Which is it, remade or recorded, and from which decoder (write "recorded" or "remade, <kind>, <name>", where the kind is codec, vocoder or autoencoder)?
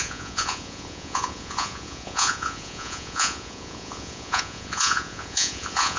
remade, vocoder, Vocos